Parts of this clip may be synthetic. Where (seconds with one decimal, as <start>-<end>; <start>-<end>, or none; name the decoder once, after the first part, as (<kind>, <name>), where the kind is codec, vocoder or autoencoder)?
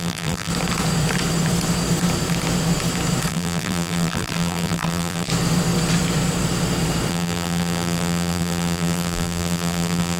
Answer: 0.0-0.5 (vocoder, BigVGAN v2); 3.3-5.3; 7.1-10.2